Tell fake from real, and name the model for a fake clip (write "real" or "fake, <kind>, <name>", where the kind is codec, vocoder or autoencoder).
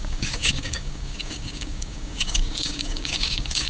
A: fake, codec, DAC